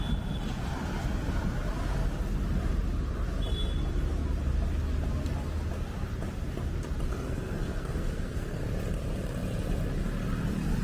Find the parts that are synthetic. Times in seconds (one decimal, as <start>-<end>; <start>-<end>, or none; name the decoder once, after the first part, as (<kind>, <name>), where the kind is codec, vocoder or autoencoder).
7.1-8.6 (codec, SNAC)